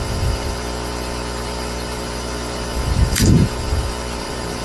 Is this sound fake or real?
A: fake